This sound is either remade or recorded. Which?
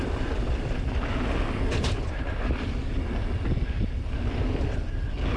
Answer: recorded